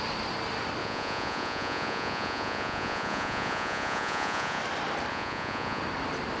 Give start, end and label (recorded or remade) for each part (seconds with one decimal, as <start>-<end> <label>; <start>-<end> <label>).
0.0-0.8 recorded; 0.8-4.6 remade; 4.6-5.1 recorded; 5.1-5.8 remade; 5.8-6.4 recorded